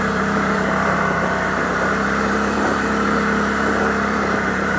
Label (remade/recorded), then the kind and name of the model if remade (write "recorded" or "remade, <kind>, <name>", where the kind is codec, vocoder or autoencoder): remade, vocoder, BigVGAN v2